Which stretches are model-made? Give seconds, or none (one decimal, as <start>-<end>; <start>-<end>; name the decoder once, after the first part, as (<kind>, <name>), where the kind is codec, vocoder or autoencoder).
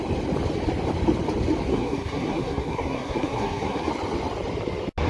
1.7-3.9 (codec, SNAC)